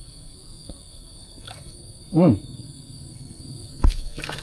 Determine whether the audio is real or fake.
fake